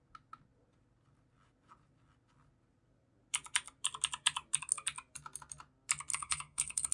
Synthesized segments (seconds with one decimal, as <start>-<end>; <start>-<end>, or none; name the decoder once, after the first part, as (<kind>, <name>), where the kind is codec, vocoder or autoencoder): 6.1-6.9 (codec, SNAC)